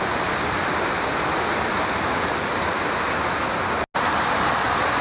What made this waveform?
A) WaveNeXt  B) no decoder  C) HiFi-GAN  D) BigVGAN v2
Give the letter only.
B